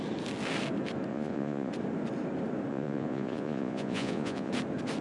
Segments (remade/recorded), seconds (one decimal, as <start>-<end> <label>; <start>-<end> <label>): 0.0-1.1 recorded; 1.1-1.7 remade; 1.7-2.7 recorded; 2.7-4.5 remade; 4.5-5.0 recorded